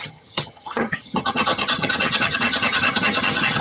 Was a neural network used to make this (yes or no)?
yes